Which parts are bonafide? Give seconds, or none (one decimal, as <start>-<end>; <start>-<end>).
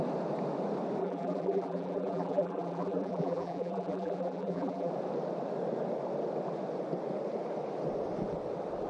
0.0-1.0; 4.9-8.9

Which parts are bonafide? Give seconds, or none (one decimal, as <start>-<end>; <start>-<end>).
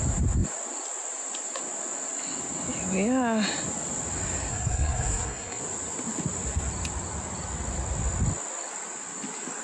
0.0-4.5; 5.6-9.6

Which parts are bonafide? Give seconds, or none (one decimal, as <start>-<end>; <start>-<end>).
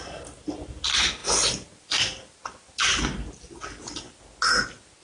0.0-5.0